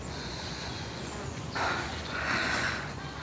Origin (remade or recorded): remade